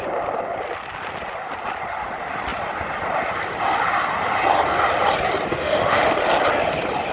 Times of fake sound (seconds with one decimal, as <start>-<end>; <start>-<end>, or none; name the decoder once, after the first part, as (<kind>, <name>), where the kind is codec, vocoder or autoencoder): 5.5-6.1 (autoencoder, DAC-VAE)